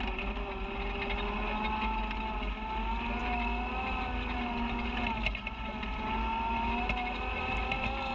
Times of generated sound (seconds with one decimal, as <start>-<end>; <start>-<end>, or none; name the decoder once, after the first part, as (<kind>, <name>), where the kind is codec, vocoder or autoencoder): none